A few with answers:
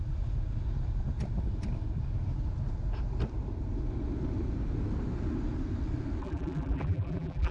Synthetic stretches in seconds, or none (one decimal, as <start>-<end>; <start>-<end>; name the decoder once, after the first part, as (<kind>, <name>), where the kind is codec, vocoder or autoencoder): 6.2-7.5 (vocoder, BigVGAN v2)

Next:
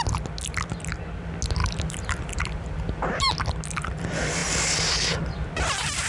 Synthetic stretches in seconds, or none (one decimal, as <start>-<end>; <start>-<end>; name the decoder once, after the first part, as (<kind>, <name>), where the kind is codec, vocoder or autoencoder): 1.6-3.3 (vocoder, BigVGAN v2)

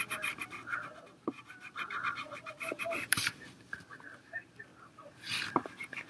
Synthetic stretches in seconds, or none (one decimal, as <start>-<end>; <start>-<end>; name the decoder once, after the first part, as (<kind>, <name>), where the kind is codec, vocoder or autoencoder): 0.0-4.7 (vocoder, BigVGAN v2); 5.5-6.1